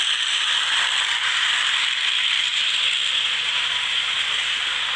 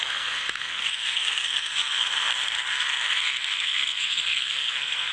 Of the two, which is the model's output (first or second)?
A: second